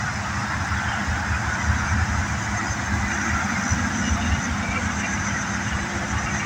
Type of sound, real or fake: real